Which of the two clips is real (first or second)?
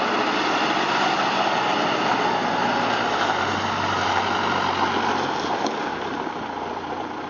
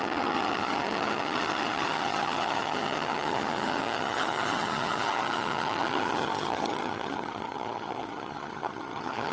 first